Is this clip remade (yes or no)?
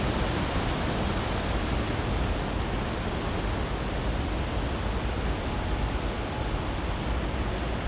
no